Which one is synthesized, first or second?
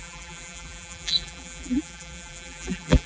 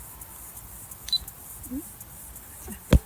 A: first